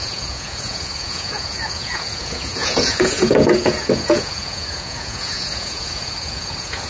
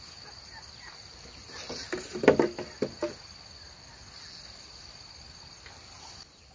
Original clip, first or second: second